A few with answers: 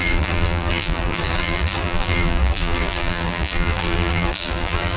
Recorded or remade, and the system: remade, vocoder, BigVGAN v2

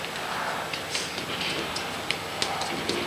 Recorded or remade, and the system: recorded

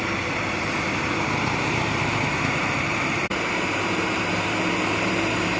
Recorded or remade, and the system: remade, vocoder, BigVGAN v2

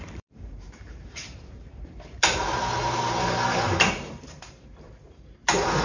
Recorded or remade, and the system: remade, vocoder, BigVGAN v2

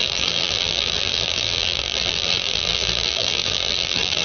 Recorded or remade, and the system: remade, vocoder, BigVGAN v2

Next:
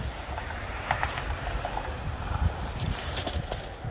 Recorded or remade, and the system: remade, vocoder, BigVGAN v2